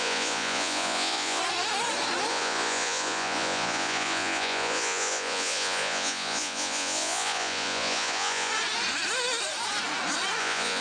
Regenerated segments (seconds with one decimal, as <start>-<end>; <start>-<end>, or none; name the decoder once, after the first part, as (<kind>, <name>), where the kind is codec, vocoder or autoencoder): 0.0-1.4 (vocoder, Vocos); 2.3-8.5; 10.4-10.8